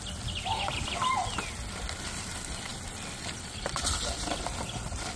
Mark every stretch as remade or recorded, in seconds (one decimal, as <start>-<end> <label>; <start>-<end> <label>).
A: 0.0-1.2 remade; 1.2-2.1 recorded; 2.1-5.2 remade

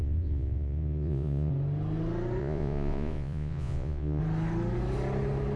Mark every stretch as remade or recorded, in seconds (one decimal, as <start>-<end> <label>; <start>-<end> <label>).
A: 0.0-1.5 remade; 1.5-2.4 recorded; 2.4-4.2 remade; 4.2-5.6 recorded

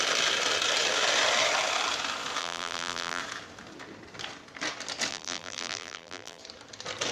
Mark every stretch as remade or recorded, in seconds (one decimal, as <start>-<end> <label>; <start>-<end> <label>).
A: 0.0-2.4 recorded; 2.4-3.2 remade; 3.2-5.1 recorded; 5.1-6.4 remade; 6.4-7.1 recorded

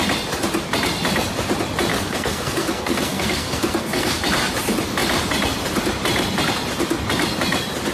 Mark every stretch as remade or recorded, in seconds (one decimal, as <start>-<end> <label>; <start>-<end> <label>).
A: 0.0-1.9 recorded; 1.9-4.2 remade; 4.2-7.9 recorded

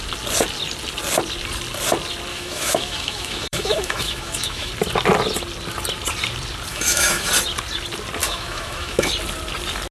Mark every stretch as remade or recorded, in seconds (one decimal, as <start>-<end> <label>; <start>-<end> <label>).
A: 0.0-2.3 recorded; 2.3-4.7 remade; 4.7-6.7 recorded; 6.7-7.3 remade; 7.3-8.2 recorded; 8.2-9.1 remade; 9.1-9.9 recorded

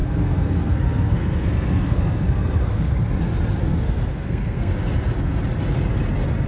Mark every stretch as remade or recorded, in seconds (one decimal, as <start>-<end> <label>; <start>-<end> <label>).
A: 0.0-2.9 remade; 2.9-3.6 recorded; 3.6-4.7 remade; 4.7-6.5 recorded

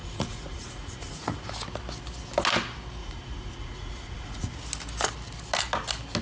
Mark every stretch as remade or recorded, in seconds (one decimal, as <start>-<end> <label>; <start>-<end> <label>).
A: 0.0-1.5 remade; 1.5-3.0 recorded; 3.0-4.6 remade; 4.6-6.2 recorded